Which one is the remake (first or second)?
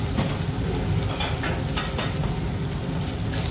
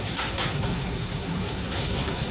second